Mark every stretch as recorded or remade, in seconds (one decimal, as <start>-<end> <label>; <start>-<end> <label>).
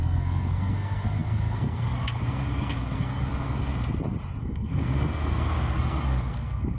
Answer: 0.0-3.7 remade; 3.7-4.4 recorded; 4.4-6.8 remade